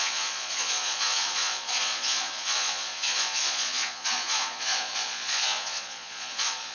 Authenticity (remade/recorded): remade